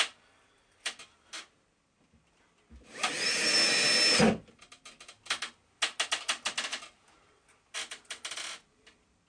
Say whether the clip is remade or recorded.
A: recorded